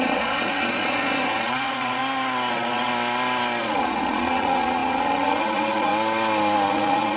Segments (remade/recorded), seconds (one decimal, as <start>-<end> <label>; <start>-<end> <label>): 0.0-2.0 remade; 2.0-2.5 recorded; 2.5-2.9 remade; 2.9-3.6 recorded; 3.6-5.9 remade; 5.9-6.7 recorded; 6.7-7.2 remade